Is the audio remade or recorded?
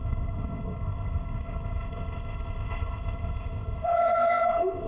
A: remade